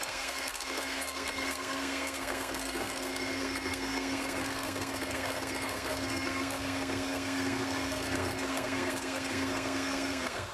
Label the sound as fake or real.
fake